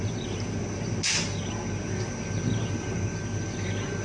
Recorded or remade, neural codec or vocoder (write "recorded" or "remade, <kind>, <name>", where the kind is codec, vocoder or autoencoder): recorded